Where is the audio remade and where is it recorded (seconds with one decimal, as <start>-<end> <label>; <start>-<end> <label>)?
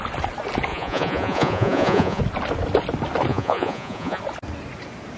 0.0-0.7 recorded; 0.7-2.2 remade; 2.2-3.3 recorded; 3.3-4.2 remade; 4.2-5.2 recorded